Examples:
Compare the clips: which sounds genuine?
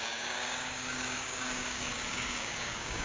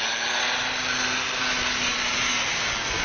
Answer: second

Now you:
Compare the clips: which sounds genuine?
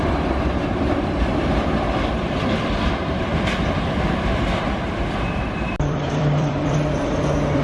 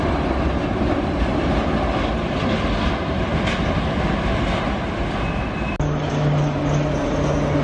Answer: second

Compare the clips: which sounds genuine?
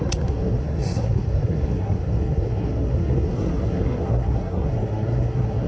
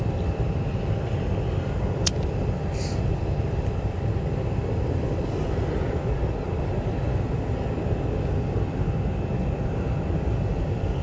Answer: second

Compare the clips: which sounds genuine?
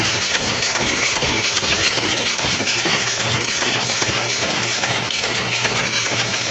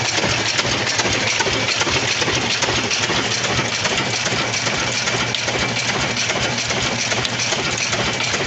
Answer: second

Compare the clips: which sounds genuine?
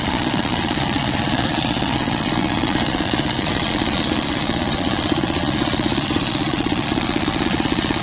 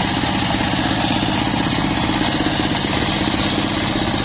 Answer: second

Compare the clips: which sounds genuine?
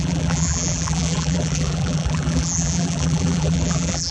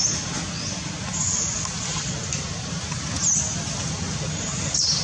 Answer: second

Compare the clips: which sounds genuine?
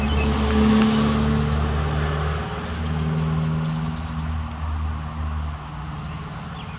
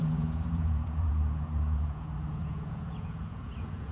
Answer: first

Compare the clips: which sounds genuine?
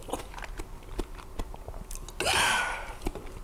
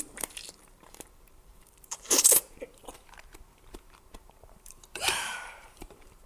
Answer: first